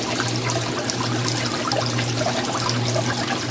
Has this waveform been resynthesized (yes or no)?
no